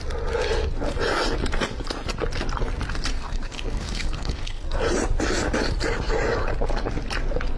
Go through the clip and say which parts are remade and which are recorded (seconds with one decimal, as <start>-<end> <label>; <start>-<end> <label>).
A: 0.0-3.1 recorded; 3.1-4.8 remade; 4.8-7.6 recorded